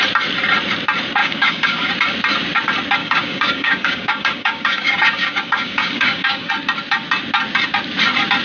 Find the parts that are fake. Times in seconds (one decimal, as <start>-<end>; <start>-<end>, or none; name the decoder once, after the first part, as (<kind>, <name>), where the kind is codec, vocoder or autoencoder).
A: 1.2-1.9 (codec, DAC); 3.0-6.5